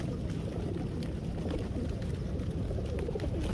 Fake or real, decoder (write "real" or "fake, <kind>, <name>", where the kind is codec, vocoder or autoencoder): real